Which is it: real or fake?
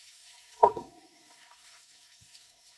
fake